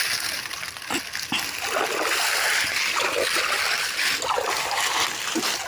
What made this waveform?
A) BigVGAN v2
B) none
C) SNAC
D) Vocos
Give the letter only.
B